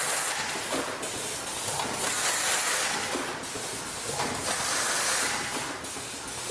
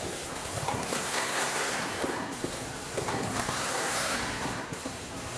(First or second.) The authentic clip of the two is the first